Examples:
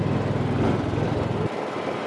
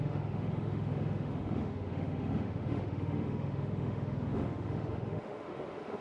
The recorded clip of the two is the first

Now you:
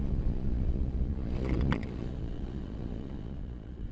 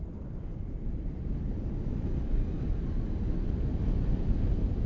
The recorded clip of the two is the second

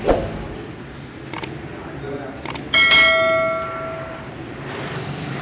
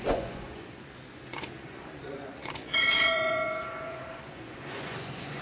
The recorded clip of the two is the first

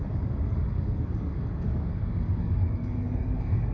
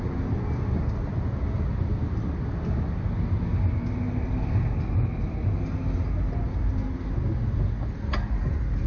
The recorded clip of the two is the second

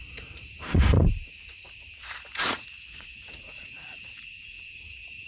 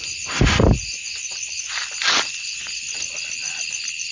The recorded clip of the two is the second